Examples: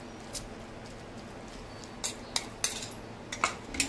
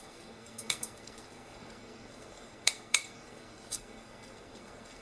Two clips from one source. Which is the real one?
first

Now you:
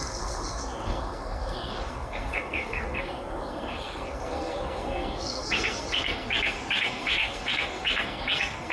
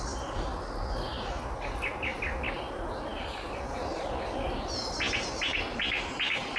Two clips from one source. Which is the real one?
second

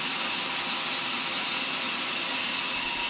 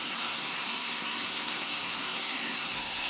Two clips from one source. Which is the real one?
first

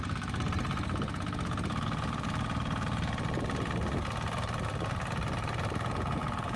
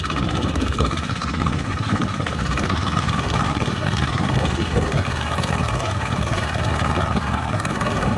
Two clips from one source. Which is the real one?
first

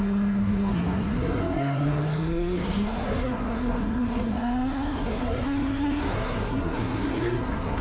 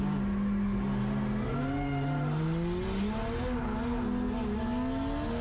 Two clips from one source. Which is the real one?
second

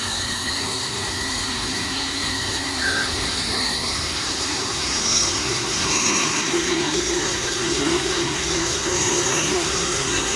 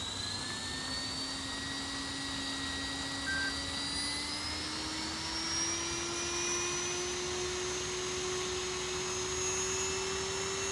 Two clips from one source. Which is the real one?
second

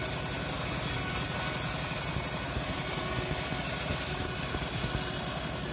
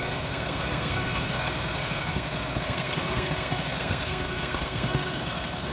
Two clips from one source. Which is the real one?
first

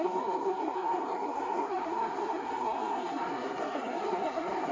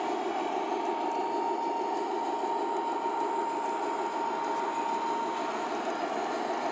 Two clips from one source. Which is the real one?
second